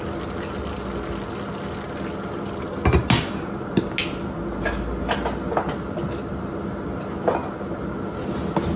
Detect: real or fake real